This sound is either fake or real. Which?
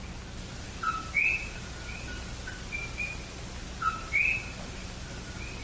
real